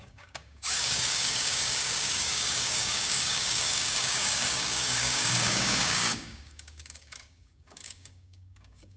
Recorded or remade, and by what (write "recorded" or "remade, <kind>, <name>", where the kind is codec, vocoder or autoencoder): remade, codec, DAC